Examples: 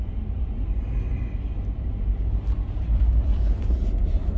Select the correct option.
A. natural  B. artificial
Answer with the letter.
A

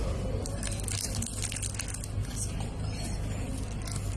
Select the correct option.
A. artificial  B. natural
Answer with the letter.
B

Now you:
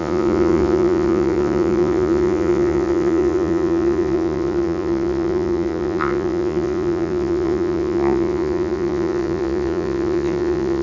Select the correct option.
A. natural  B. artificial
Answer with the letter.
B